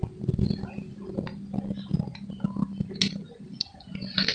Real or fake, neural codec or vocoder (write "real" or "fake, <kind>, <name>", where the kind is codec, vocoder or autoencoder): real